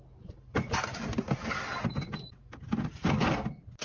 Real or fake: real